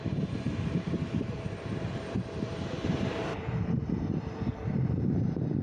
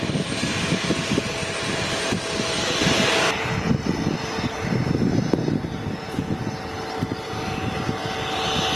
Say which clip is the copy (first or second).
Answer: first